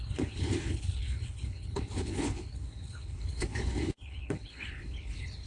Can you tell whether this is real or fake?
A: fake